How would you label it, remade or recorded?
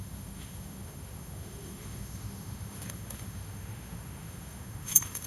remade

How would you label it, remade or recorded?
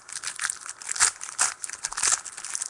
recorded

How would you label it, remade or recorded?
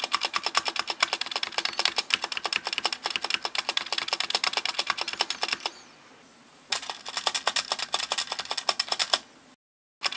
recorded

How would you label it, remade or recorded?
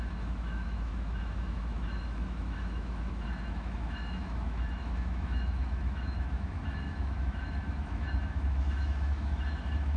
remade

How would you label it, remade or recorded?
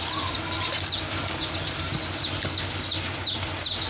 recorded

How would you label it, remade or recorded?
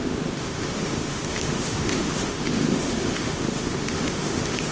remade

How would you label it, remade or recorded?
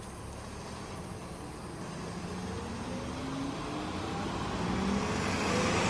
recorded